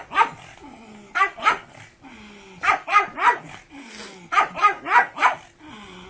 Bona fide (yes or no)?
yes